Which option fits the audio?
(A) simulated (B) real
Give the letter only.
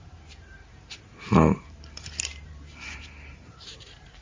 A